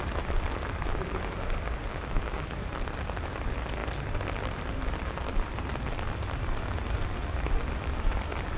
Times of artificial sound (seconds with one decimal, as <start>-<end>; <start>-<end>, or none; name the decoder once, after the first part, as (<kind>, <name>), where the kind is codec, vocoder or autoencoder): 1.9-2.7 (autoencoder, DAC-VAE)